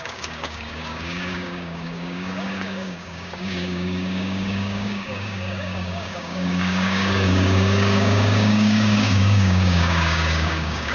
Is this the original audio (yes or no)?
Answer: no